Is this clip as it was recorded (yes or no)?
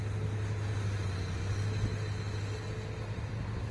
yes